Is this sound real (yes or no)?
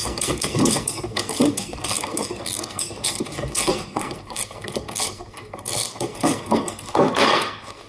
no